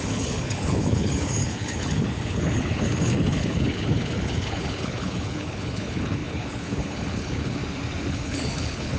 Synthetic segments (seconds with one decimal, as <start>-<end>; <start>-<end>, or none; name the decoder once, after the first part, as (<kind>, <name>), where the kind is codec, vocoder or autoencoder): 0.0-7.6 (codec, HILCodec); 8.1-9.0